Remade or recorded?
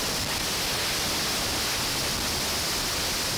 recorded